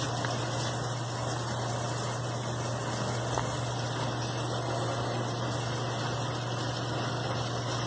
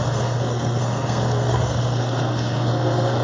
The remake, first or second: second